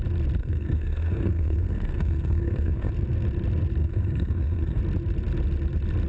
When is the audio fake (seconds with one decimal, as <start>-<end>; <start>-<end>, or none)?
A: 0.4-2.9; 3.8-4.8